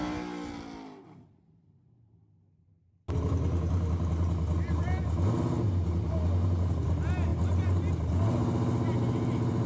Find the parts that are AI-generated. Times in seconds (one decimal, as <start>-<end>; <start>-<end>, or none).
none